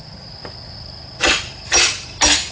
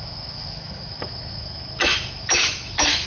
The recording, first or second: first